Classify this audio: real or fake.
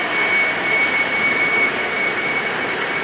fake